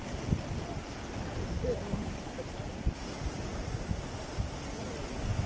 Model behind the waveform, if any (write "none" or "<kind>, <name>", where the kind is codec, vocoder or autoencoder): none